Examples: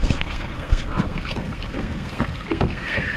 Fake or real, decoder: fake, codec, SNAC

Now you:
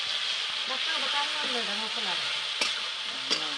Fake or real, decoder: real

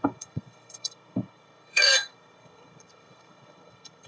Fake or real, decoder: fake, codec, SNAC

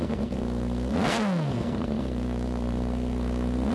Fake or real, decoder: fake, codec, SNAC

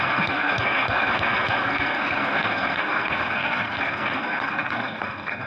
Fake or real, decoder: fake, codec, SNAC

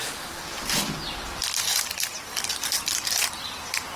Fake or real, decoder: real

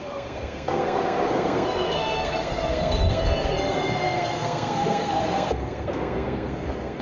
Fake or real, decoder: fake, codec, SNAC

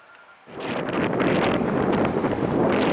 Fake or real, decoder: real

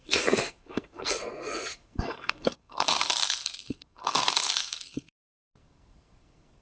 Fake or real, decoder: fake, codec, SNAC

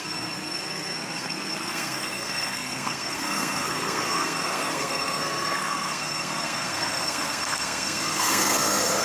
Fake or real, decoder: fake, codec, SNAC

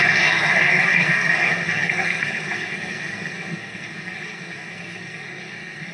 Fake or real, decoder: fake, codec, SNAC